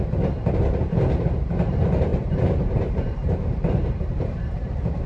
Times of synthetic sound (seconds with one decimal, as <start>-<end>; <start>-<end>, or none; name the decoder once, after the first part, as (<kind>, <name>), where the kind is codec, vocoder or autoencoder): 2.1-5.1 (vocoder, BigVGAN v2)